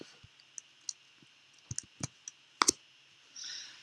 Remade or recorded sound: recorded